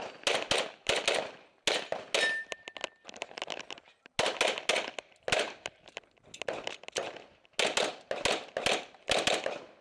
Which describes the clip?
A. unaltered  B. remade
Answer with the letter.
A